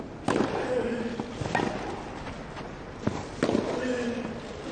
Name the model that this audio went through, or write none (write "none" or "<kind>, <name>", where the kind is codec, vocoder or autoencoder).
none